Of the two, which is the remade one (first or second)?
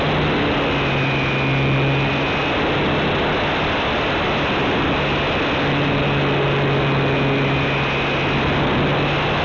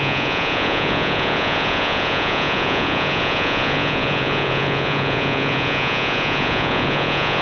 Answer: second